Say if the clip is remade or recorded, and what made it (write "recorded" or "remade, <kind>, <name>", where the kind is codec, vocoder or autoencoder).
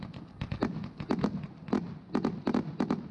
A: recorded